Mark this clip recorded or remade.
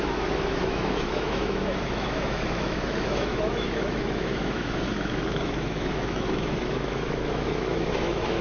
remade